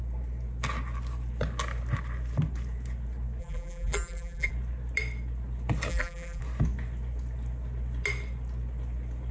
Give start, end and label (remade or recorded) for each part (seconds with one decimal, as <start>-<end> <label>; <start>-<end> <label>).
0.0-3.4 recorded; 3.4-4.5 remade; 4.5-5.9 recorded; 5.9-6.4 remade; 6.4-9.3 recorded